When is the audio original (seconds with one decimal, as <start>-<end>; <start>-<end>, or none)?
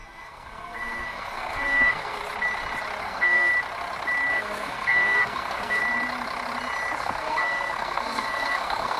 2.2-3.0; 3.5-4.3; 5.8-7.0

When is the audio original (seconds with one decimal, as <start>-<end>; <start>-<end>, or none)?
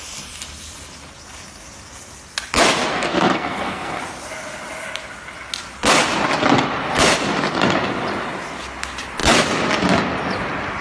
0.0-2.9; 4.0-10.8